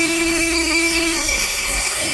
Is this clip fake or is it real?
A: fake